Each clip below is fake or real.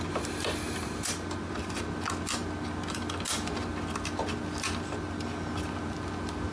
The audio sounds real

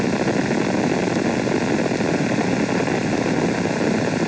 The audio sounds real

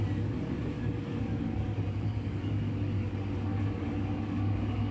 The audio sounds fake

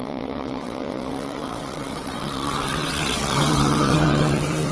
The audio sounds fake